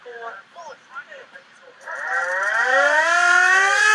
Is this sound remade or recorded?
remade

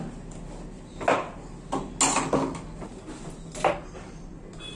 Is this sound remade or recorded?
recorded